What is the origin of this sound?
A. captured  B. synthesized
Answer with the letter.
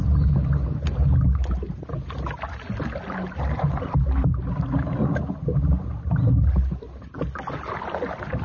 A